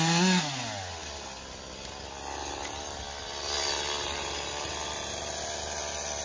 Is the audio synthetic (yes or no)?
no